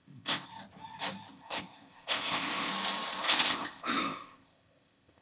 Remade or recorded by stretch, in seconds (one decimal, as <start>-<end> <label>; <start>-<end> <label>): 0.0-0.5 remade; 0.5-1.3 recorded; 1.3-2.7 remade; 2.7-3.2 recorded; 3.2-5.2 remade